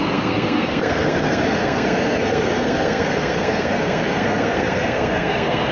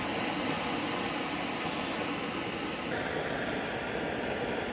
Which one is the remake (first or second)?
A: first